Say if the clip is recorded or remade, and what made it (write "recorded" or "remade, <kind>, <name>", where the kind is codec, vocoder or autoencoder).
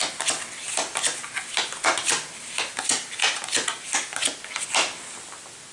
recorded